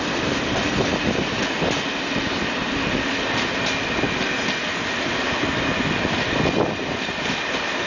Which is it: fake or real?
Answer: real